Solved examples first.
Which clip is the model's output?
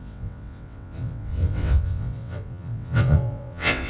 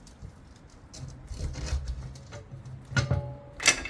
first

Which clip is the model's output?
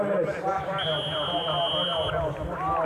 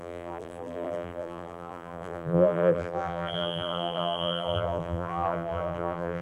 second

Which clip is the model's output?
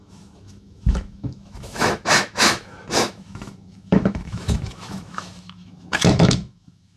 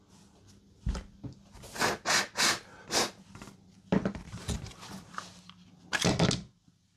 first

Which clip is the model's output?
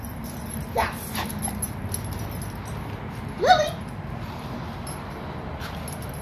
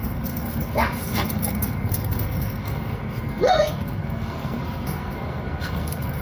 second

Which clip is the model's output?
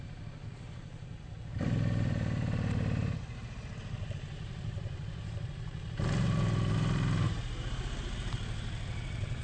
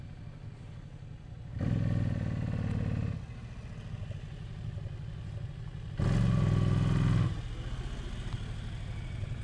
first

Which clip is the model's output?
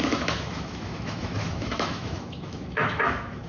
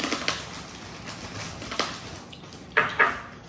first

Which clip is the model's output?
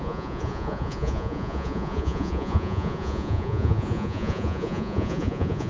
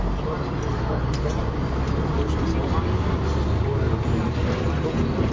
first